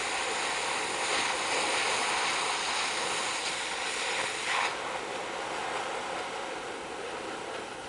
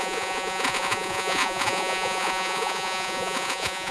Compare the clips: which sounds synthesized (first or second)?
second